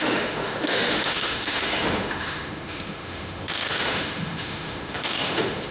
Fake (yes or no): yes